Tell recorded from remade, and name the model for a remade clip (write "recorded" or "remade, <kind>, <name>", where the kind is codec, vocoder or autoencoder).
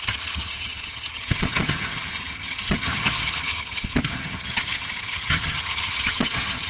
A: remade, vocoder, HiFi-GAN